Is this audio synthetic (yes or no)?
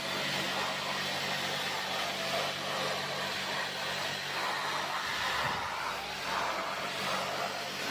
no